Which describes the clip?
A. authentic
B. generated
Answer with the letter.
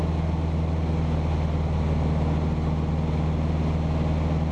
A